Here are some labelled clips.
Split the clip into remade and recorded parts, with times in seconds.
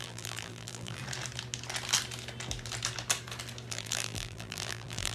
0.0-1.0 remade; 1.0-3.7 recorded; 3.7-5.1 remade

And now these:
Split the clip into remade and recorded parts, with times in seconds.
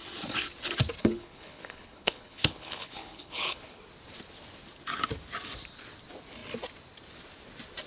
0.0-1.0 recorded; 1.0-3.8 remade; 3.8-7.9 recorded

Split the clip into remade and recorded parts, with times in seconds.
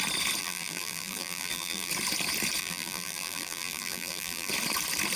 0.0-0.4 recorded; 0.4-1.9 remade; 1.9-2.6 recorded; 2.6-4.5 remade; 4.5-5.2 recorded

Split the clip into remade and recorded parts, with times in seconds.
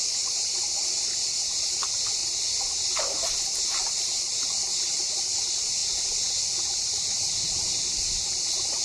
0.0-8.8 recorded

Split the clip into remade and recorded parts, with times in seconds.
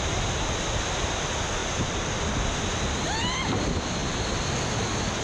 0.0-4.0 recorded; 4.0-5.2 remade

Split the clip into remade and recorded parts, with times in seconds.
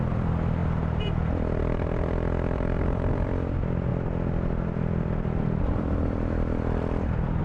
0.0-7.4 remade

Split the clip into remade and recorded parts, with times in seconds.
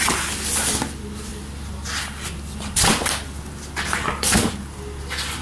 0.0-1.3 recorded; 1.3-4.5 remade; 4.5-5.4 recorded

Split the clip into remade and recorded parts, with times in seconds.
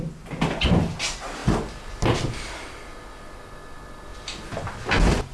0.0-5.3 recorded